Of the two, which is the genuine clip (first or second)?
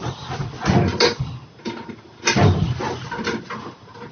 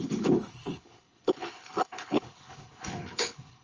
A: first